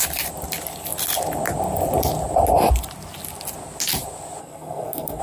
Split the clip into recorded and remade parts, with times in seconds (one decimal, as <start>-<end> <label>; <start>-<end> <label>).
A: 0.0-4.4 recorded; 4.4-5.2 remade